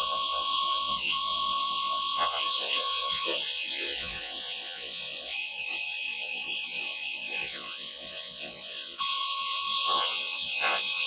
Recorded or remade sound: remade